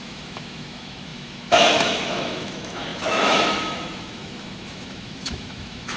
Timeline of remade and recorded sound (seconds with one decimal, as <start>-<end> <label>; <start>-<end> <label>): 0.0-6.0 remade